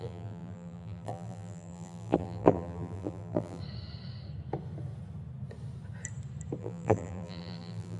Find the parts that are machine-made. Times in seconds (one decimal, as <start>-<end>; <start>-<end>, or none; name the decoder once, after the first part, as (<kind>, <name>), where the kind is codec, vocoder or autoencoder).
0.0-3.6 (vocoder, BigVGAN v2); 6.6-8.0